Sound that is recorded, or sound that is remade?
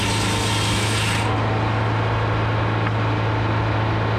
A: recorded